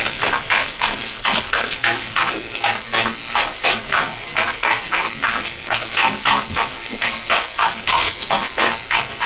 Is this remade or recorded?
remade